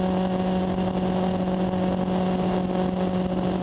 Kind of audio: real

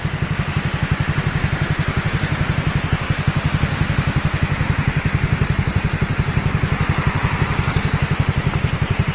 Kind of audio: real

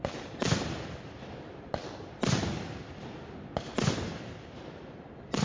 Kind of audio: real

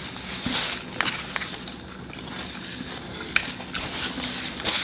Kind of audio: real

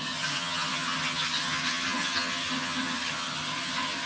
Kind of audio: fake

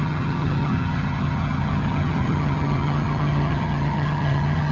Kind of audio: fake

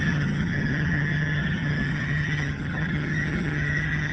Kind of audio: fake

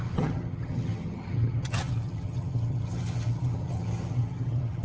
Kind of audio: fake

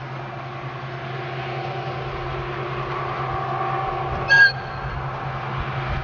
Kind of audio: real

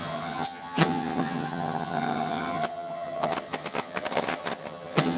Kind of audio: fake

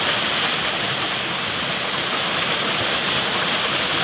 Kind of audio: real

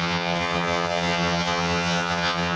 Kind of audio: fake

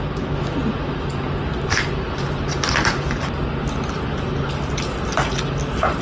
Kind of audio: real